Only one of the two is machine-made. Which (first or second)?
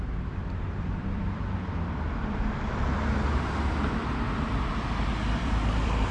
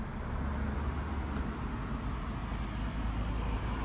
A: first